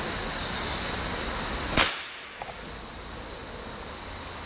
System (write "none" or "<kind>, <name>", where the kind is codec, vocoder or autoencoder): none